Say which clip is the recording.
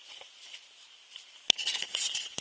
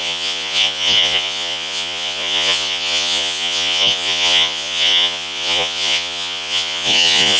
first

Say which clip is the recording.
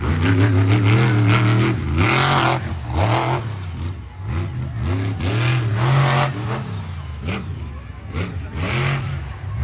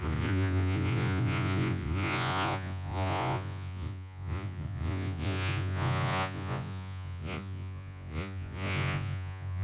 first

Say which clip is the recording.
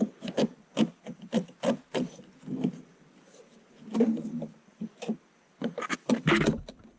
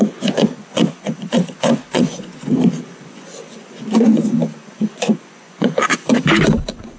first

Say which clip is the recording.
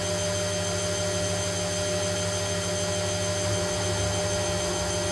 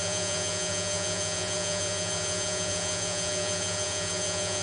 first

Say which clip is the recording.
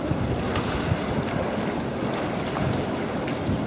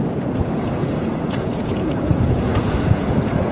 first